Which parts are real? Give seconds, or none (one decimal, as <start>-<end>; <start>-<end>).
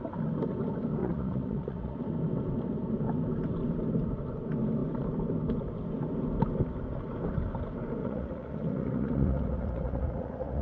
0.0-1.0; 2.0-8.0